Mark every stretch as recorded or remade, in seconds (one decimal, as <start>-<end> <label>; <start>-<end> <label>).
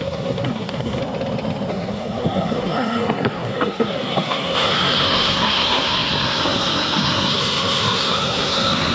0.0-1.0 remade; 1.0-1.7 recorded; 1.7-8.9 remade